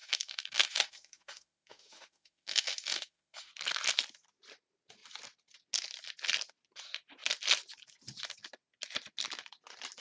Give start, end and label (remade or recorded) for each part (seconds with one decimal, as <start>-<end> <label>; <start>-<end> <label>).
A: 0.0-3.5 remade; 3.5-10.0 recorded